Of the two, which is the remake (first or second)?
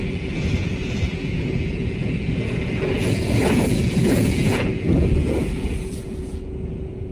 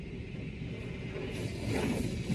first